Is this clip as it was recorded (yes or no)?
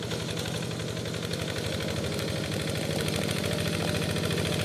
yes